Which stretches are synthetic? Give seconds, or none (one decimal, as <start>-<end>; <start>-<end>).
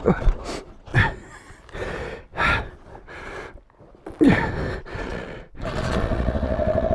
0.0-0.9; 5.0-6.9